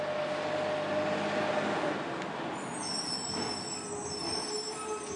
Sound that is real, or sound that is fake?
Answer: real